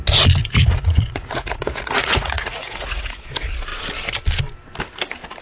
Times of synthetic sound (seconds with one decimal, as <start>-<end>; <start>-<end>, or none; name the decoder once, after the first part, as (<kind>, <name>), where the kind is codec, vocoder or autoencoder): 0.4-3.2 (vocoder, Vocos)